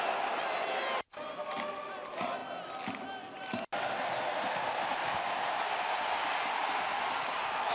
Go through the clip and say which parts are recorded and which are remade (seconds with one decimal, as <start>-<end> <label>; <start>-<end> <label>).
0.0-7.7 recorded